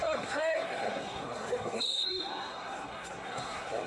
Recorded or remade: remade